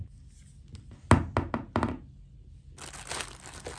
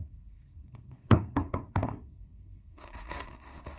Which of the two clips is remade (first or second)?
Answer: second